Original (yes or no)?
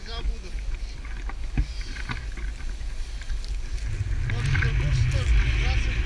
yes